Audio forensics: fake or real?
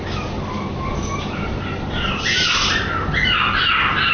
real